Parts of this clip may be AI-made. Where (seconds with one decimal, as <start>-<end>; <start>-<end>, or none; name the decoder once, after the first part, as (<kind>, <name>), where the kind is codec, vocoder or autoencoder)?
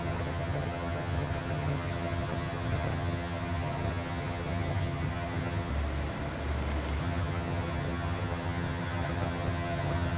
0.0-5.7 (vocoder, HiFi-GAN); 7.0-10.2